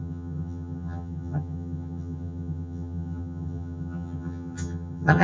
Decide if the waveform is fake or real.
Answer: fake